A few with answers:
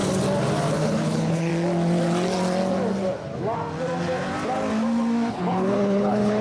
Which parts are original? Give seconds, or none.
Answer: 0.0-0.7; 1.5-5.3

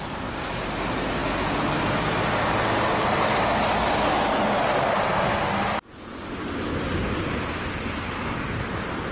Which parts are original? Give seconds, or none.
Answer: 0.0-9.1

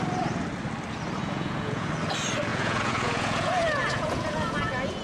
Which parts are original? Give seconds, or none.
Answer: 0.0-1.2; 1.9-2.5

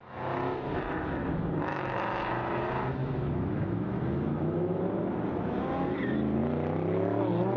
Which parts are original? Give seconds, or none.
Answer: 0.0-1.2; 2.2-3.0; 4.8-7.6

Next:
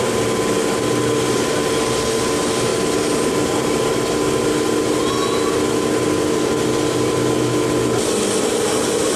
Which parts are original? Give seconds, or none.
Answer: 0.0-9.2

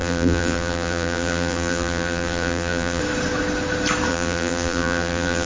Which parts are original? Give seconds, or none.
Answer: 3.0-4.1

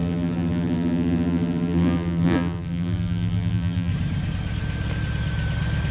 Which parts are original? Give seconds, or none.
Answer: 3.9-5.9